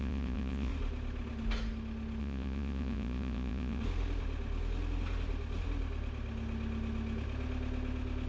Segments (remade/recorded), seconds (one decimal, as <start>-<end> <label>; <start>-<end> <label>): 0.0-0.7 remade; 0.7-2.2 recorded; 2.2-3.8 remade; 3.8-8.3 recorded